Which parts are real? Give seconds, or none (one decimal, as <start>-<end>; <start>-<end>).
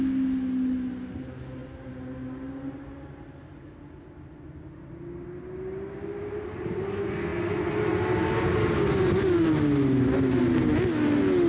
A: 0.0-11.5